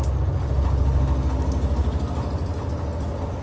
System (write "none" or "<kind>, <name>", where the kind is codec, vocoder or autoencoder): none